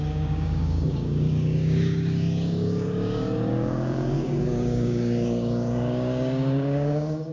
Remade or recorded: remade